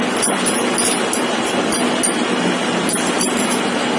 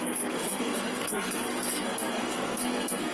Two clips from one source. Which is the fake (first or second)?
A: second